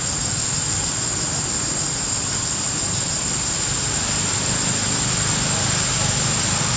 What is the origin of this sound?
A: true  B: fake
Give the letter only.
A